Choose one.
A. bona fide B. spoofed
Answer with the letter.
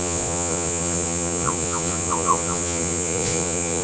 B